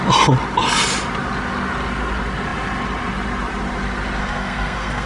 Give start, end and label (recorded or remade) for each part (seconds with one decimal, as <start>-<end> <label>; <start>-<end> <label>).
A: 0.0-4.2 recorded; 4.2-5.1 remade